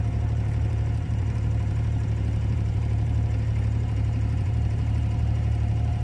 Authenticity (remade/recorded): remade